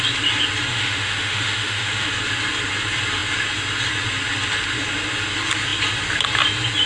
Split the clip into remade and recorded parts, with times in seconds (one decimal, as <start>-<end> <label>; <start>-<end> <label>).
0.0-0.7 recorded; 0.7-2.1 remade; 2.1-6.9 recorded